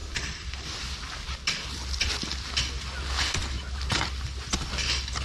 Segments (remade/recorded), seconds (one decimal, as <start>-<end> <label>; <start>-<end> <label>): 0.0-2.1 remade; 2.1-5.2 recorded